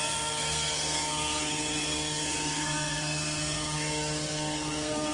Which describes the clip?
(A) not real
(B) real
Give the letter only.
A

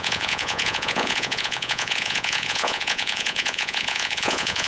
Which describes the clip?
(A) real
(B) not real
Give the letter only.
B